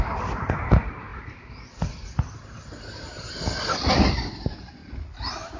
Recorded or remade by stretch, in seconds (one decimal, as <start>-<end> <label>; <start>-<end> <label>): 0.0-5.6 recorded